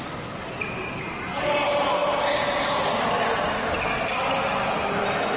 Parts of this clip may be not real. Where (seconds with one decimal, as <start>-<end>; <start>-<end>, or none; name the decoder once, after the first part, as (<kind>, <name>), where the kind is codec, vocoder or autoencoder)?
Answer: none